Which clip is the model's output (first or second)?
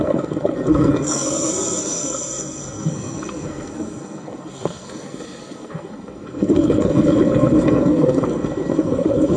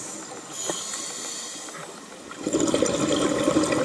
first